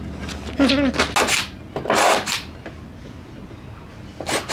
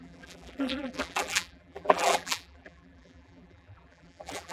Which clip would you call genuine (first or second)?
first